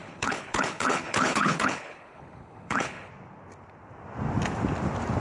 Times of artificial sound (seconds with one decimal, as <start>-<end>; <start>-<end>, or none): 0.0-3.1